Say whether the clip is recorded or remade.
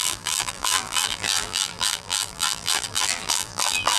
remade